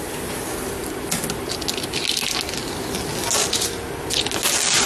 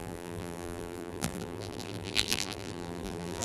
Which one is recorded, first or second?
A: first